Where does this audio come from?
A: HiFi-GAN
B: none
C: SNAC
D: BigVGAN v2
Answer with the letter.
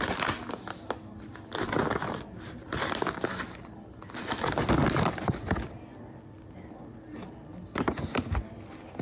B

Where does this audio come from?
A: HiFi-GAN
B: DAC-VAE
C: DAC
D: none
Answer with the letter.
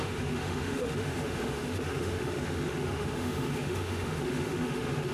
B